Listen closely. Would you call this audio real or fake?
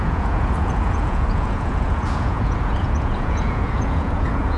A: fake